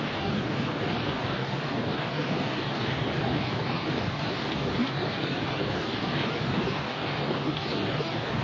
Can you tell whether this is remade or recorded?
remade